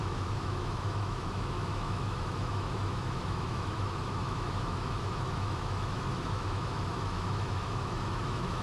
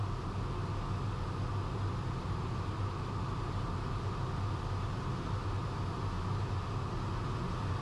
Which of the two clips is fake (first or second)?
first